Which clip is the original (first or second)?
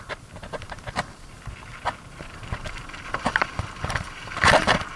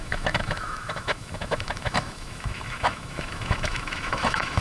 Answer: first